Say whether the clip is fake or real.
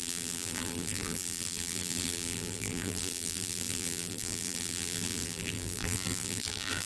fake